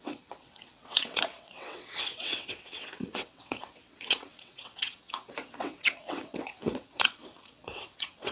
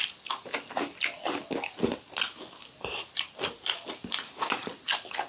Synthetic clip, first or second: first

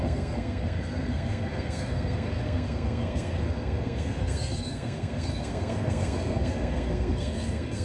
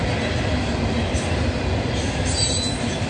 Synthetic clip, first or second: first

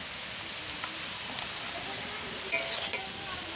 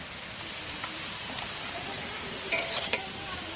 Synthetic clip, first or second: second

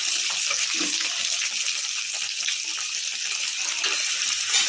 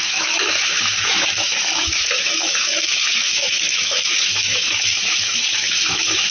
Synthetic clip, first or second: second